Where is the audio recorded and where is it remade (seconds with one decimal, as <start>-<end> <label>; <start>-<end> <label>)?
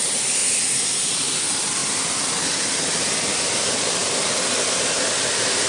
0.0-5.7 recorded